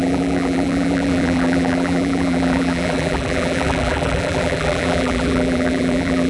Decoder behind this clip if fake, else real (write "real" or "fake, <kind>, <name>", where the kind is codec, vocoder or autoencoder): fake, vocoder, BigVGAN v2